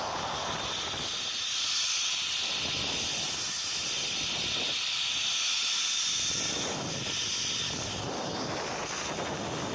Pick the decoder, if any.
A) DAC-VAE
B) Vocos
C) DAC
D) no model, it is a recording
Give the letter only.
D